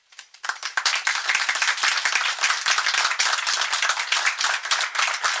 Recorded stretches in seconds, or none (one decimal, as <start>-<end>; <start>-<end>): 0.9-1.8